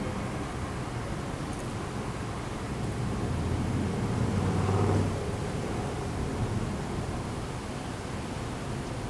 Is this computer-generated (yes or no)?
no